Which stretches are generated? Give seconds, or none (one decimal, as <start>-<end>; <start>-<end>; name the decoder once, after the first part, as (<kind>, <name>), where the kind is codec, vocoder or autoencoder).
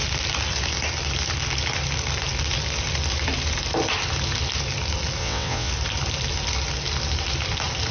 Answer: 5.2-5.7 (vocoder, WaveNeXt)